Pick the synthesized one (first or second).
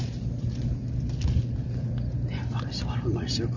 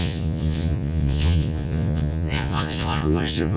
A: second